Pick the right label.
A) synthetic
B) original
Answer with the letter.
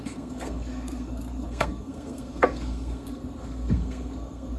A